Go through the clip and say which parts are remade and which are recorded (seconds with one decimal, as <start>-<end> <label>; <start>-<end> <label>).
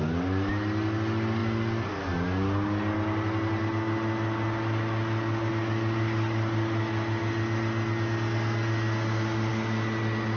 0.0-10.4 recorded